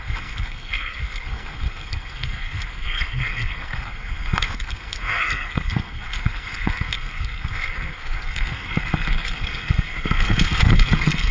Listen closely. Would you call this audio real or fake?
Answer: fake